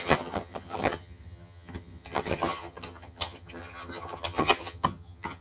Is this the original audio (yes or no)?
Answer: no